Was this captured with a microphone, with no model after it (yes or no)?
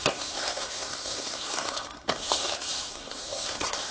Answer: no